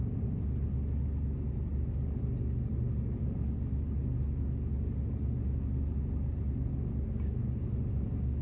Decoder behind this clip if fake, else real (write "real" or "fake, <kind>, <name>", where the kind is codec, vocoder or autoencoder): real